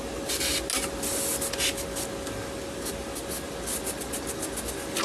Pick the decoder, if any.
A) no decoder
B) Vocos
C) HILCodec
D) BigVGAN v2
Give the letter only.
A